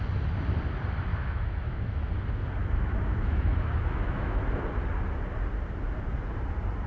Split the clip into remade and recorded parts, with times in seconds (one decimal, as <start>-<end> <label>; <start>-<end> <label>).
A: 0.0-1.1 recorded; 1.1-2.1 remade; 2.1-2.6 recorded; 2.6-4.4 remade; 4.4-6.9 recorded